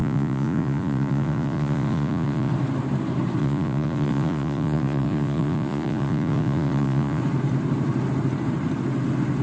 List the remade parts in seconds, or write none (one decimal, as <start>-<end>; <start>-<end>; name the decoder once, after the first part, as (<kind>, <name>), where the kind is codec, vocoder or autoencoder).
0.0-2.5 (vocoder, Vocos); 3.4-7.2